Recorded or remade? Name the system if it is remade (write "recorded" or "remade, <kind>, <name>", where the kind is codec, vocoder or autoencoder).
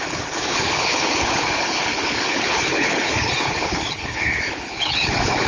remade, codec, HILCodec